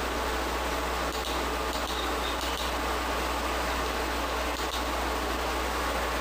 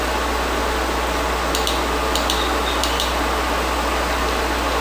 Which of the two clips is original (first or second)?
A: second